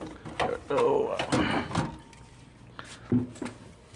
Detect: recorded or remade recorded